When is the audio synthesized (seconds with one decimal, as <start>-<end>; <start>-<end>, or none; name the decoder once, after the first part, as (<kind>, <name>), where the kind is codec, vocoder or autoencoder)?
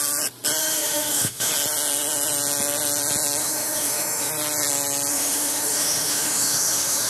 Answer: 0.6-1.5 (autoencoder, DAC-VAE); 3.4-4.3; 5.1-7.1